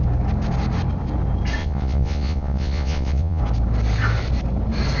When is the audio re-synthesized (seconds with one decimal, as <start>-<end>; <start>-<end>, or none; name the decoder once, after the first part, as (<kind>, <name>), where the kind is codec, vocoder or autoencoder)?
1.6-3.4 (vocoder, Vocos)